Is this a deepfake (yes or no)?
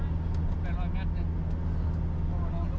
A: no